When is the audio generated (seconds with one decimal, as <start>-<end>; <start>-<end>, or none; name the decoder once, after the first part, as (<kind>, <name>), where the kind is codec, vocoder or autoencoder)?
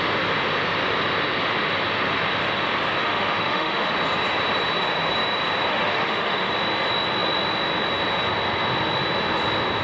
3.0-3.9 (autoencoder, DAC-VAE); 5.7-6.5